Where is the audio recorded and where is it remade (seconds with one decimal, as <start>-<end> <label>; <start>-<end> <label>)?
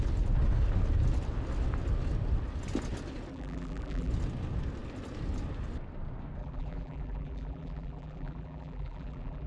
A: 0.0-3.3 recorded; 3.3-4.1 remade; 4.1-6.4 recorded; 6.4-9.5 remade